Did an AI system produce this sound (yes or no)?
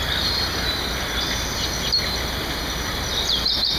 no